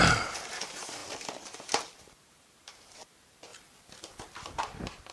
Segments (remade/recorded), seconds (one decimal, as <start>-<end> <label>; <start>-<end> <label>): 0.0-1.0 remade; 1.0-2.0 recorded; 2.0-3.5 remade; 3.5-4.6 recorded; 4.6-5.1 remade